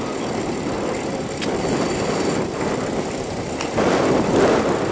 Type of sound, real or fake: real